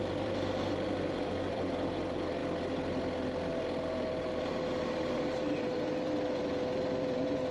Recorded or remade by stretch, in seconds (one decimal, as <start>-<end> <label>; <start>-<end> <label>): 0.0-2.4 remade; 2.4-4.5 recorded; 4.5-7.5 remade